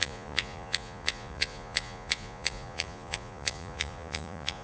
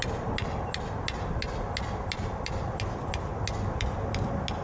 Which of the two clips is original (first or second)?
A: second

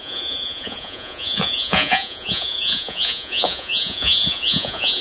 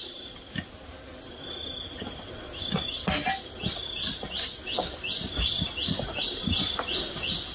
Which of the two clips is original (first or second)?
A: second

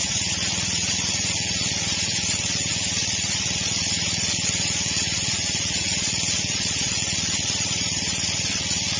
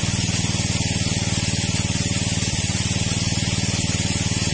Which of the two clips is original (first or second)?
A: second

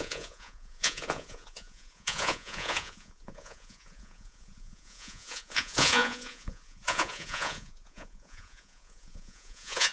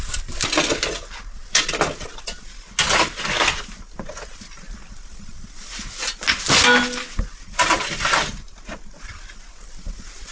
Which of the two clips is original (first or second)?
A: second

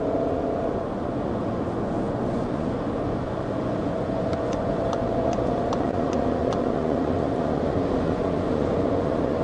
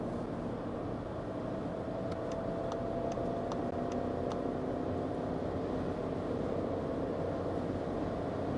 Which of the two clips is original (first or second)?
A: second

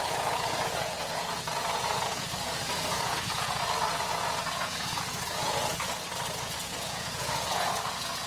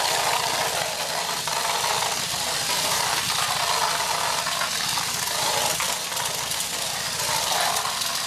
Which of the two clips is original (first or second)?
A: second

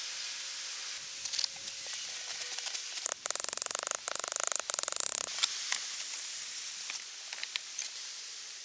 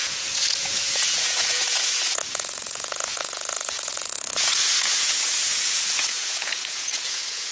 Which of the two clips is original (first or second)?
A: first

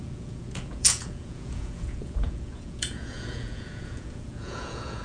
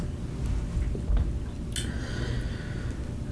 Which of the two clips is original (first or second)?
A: second